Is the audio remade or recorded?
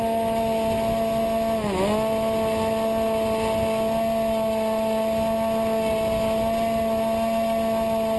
recorded